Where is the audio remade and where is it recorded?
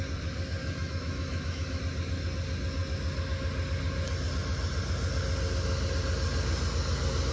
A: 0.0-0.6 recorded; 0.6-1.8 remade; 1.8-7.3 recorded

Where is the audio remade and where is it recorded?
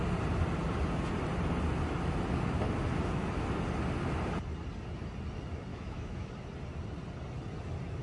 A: 0.0-5.7 recorded; 5.7-6.3 remade; 6.3-8.0 recorded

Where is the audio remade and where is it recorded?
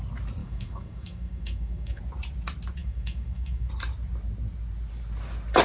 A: 0.0-0.4 recorded; 0.4-2.0 remade; 2.0-2.8 recorded; 2.8-3.7 remade; 3.7-5.6 recorded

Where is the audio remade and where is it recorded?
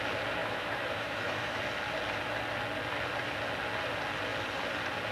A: 0.0-0.4 recorded; 0.4-1.6 remade; 1.6-5.1 recorded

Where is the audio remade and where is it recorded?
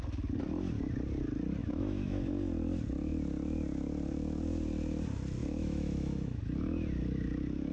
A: 0.0-1.6 recorded; 1.6-2.3 remade; 2.3-5.4 recorded; 5.4-6.4 remade; 6.4-7.7 recorded